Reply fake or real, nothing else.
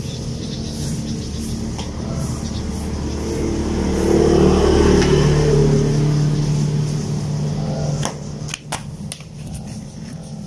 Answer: real